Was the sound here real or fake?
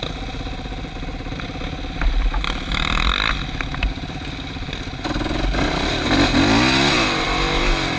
real